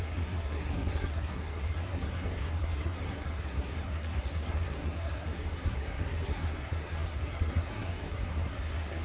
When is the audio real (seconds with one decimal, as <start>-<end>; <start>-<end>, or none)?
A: none